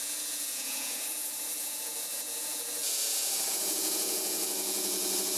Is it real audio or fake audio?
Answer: fake